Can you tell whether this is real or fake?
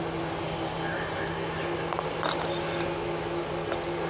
real